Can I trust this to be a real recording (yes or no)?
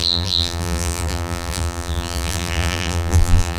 no